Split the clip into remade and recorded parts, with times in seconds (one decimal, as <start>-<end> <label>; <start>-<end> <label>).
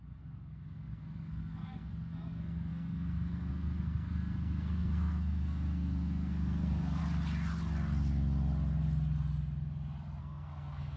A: 0.0-7.0 remade; 7.0-10.2 recorded; 10.2-11.0 remade